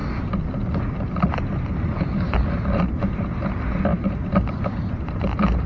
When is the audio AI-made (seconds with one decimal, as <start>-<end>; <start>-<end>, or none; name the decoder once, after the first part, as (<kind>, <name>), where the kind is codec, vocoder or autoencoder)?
none